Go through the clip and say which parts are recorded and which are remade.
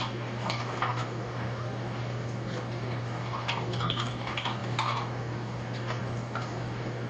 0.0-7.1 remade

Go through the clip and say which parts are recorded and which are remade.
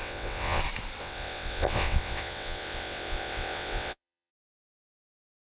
0.0-0.6 remade; 0.6-1.0 recorded; 1.0-4.3 remade; 4.3-5.5 recorded